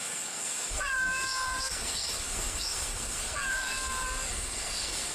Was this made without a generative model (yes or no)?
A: no